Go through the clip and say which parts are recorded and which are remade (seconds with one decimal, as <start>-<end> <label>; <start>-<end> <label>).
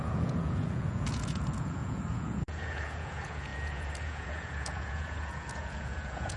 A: 0.0-6.4 remade